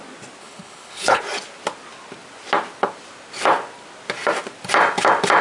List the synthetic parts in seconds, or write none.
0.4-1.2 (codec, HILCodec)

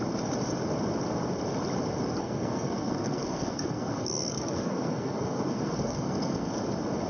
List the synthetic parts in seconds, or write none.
2.2-6.5 (codec, SNAC)

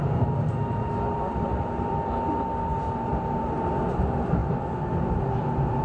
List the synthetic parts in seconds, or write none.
0.0-4.4 (vocoder, BigVGAN v2); 5.3-5.8